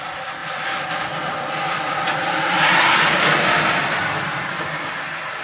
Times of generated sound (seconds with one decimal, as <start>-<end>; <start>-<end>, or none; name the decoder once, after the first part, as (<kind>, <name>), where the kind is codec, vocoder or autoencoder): 0.4-2.6 (vocoder, BigVGAN v2)